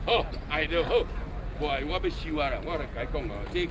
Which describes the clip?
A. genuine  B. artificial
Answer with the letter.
A